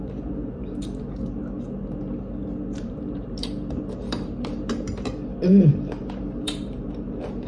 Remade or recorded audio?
remade